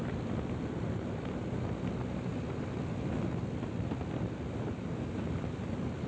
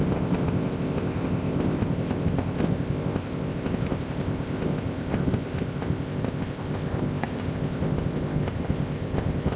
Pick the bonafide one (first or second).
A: first